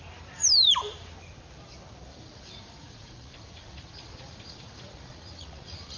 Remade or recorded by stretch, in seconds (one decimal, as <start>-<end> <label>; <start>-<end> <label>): 0.0-2.1 recorded; 2.1-6.0 remade